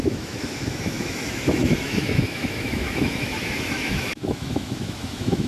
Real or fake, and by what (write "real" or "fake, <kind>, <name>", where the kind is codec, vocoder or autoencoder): fake, autoencoder, DAC-VAE